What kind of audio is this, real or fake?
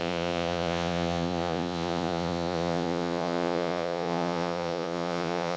fake